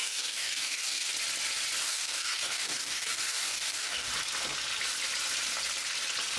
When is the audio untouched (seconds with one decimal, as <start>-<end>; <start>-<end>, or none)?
1.1-1.8; 4.1-6.4